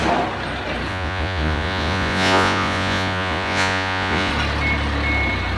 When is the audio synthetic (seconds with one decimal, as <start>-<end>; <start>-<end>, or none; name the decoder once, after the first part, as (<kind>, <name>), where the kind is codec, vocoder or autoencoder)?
0.9-4.3 (vocoder, Vocos)